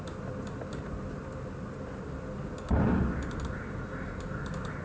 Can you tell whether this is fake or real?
real